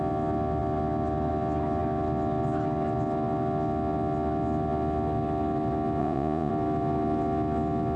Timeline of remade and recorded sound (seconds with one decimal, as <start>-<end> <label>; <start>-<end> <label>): 0.0-6.0 recorded; 6.0-6.5 remade; 6.5-8.0 recorded